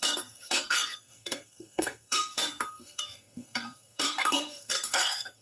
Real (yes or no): no